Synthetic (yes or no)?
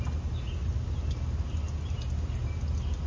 no